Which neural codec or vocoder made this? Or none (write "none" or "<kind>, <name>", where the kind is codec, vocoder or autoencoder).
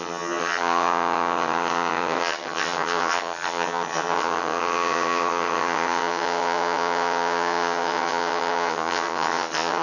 vocoder, HiFi-GAN